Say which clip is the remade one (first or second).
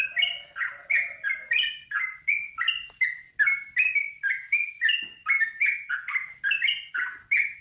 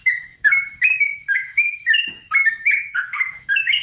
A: second